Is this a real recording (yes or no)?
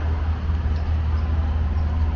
yes